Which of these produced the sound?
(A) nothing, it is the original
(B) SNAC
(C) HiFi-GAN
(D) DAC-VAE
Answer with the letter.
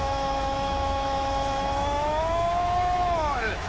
D